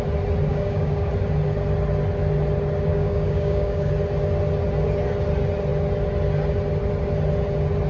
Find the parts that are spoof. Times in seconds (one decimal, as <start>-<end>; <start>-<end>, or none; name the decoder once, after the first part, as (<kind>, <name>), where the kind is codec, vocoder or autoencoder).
0.5-1.1 (codec, DAC); 2.9-3.9